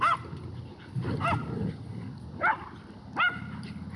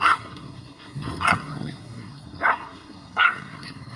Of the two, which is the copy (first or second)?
second